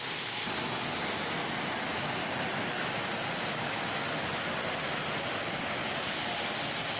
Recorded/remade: recorded